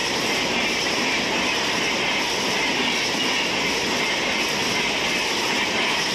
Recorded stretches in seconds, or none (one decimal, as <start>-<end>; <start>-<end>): 0.0-6.1